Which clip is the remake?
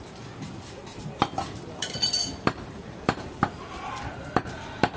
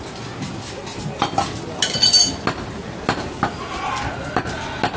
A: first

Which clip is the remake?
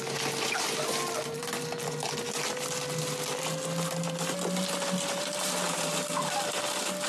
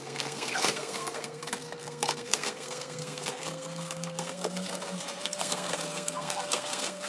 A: second